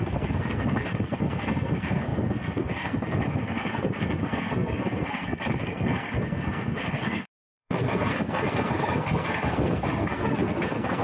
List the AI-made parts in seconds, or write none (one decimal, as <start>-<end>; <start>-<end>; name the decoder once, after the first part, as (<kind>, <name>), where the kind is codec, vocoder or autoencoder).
0.0-11.0 (codec, SNAC)